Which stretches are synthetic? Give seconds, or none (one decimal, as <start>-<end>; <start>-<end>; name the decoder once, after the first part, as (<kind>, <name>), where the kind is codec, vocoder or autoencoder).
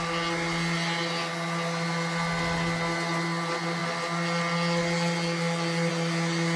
none